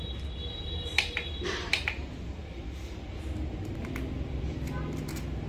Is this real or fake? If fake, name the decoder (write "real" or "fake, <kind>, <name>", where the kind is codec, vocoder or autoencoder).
real